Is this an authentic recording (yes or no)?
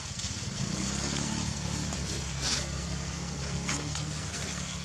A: no